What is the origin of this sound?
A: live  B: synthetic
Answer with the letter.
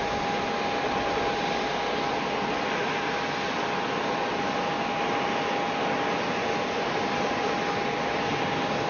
A